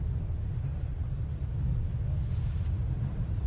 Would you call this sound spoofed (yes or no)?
no